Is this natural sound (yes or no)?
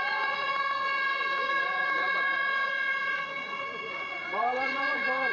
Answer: no